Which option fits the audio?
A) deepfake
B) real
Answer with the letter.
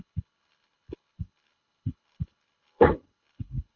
A